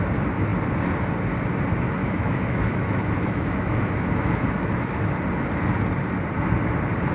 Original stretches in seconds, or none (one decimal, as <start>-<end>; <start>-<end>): 0.0-2.0; 5.1-7.1